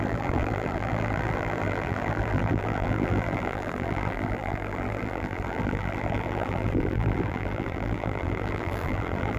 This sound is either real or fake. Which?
fake